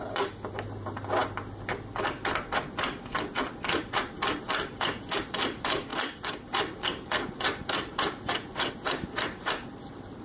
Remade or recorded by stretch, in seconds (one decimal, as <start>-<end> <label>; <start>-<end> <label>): 0.0-1.2 remade; 1.2-3.8 recorded; 3.8-10.2 remade